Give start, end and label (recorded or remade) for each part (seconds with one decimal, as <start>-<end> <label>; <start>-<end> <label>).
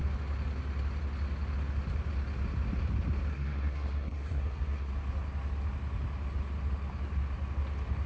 0.0-3.3 recorded; 3.3-4.9 remade; 4.9-8.1 recorded